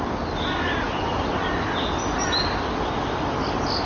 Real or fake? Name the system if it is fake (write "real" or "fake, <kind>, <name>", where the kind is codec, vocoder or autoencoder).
real